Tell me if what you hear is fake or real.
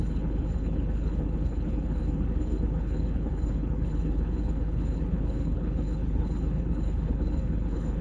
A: fake